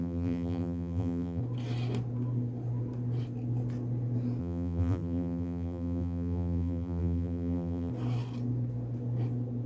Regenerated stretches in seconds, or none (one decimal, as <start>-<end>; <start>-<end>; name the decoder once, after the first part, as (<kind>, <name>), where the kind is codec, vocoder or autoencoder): 0.0-1.4 (vocoder, BigVGAN v2); 4.4-7.9